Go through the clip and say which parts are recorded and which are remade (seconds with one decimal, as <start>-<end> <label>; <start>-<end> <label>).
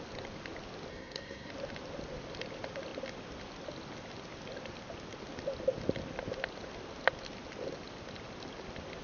0.0-0.9 recorded; 0.9-1.5 remade; 1.5-9.0 recorded